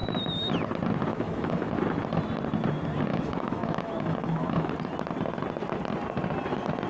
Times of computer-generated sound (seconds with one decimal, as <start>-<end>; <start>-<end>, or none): 1.1-1.7; 3.1-4.7